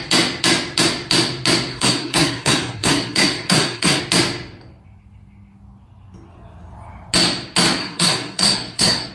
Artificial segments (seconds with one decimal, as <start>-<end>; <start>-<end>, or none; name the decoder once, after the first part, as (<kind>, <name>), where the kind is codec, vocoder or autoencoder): 1.7-4.0 (codec, SNAC); 7.8-9.1